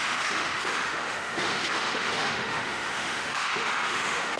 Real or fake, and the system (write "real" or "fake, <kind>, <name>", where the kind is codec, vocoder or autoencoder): fake, autoencoder, DAC-VAE